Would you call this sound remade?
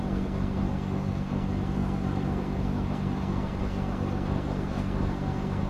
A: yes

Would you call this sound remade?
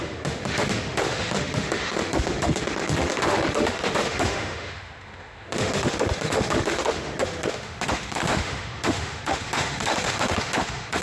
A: yes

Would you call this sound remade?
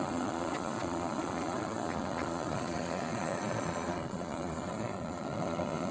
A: yes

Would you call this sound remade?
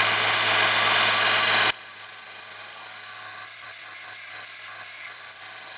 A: no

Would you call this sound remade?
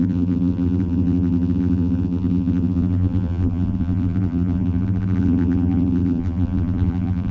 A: yes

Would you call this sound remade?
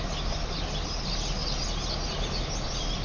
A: no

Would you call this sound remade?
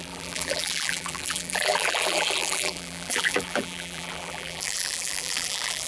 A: yes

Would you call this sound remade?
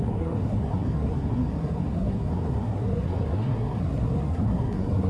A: yes